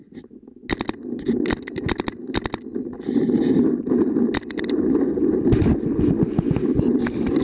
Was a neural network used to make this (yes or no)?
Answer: no